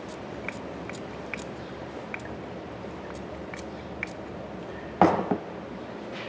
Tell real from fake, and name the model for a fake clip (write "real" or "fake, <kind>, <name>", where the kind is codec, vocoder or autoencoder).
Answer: real